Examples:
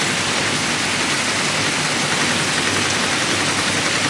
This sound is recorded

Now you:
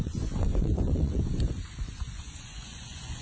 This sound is remade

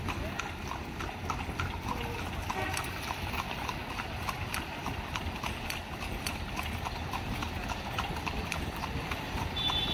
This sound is recorded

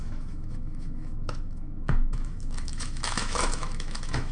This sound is remade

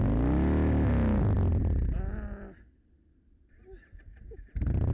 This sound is recorded